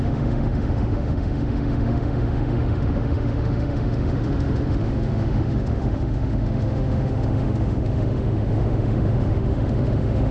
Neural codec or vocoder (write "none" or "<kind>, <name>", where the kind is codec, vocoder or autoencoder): autoencoder, DAC-VAE